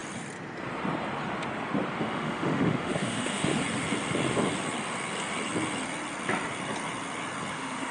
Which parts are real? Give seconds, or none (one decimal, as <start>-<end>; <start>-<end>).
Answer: 0.0-2.0; 3.5-7.5